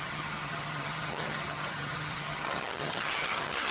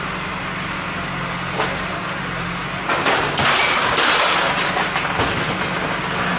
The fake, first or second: first